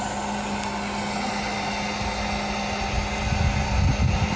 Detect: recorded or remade recorded